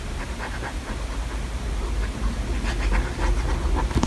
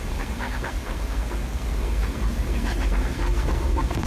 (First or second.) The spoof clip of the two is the second